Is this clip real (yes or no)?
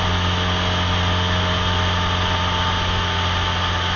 yes